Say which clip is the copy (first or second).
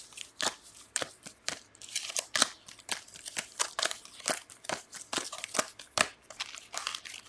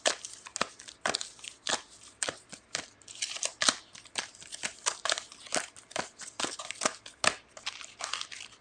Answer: first